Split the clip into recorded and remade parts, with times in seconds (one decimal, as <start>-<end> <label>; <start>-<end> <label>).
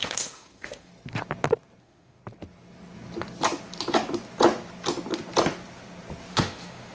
0.0-0.9 remade; 0.9-1.8 recorded; 1.8-2.2 remade; 2.2-6.3 recorded; 6.3-6.9 remade